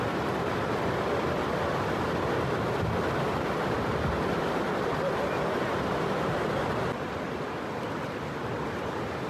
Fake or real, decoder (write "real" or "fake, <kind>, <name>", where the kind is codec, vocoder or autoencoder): real